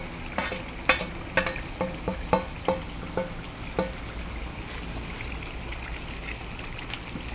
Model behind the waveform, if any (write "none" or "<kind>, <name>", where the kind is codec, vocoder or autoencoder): none